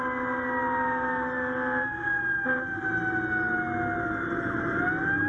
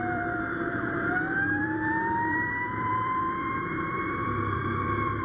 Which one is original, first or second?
first